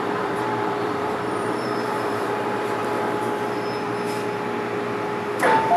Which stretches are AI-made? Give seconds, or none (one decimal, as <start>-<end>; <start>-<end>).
0.0-2.8